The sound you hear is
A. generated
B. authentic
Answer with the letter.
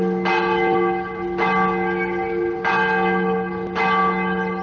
B